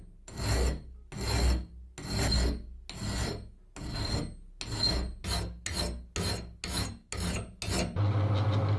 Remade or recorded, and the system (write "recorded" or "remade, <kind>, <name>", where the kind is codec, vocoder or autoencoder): recorded